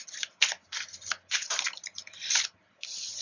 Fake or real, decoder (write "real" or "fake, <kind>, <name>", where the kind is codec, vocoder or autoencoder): real